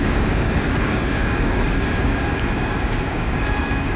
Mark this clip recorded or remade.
remade